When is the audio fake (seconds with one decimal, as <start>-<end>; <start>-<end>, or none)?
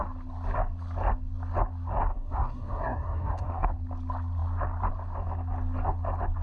2.1-3.7